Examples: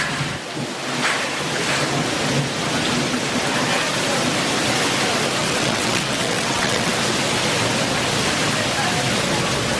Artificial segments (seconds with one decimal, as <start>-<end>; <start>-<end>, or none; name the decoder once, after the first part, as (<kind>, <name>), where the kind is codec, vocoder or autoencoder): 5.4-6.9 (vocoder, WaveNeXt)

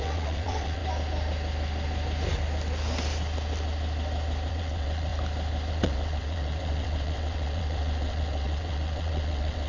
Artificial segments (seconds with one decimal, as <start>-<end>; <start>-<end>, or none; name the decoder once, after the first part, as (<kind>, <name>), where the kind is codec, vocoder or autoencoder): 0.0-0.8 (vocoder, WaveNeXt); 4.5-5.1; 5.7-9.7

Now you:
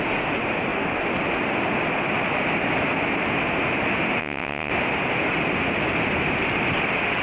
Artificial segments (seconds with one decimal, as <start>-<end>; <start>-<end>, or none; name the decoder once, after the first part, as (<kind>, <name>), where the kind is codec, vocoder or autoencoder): 4.2-4.7 (vocoder, WaveNeXt)